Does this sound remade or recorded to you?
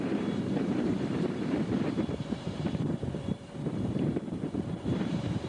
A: remade